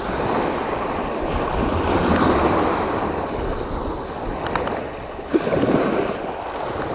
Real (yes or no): yes